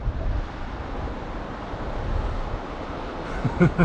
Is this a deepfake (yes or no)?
no